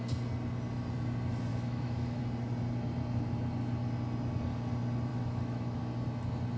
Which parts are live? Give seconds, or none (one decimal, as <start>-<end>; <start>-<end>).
0.0-1.5; 2.2-5.1; 5.8-6.6